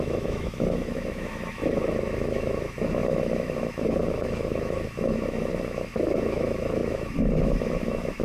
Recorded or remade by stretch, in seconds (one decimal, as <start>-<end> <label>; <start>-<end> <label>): 0.0-8.2 remade